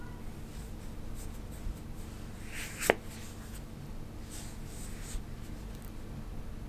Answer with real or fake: real